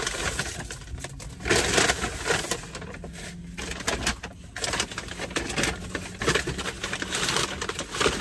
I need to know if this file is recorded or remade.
recorded